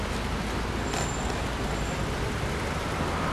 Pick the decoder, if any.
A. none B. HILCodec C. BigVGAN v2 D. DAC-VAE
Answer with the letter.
A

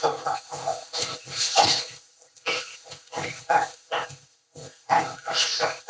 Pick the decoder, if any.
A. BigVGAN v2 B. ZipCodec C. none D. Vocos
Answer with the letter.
B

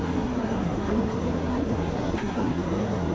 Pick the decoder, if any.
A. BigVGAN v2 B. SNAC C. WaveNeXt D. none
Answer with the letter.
B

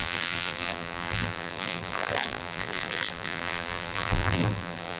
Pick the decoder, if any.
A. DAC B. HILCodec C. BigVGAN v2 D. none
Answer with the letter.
C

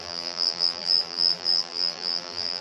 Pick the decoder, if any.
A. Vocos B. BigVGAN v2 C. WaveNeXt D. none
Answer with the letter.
B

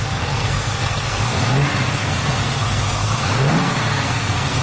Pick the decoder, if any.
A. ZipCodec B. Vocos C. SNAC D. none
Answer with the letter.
C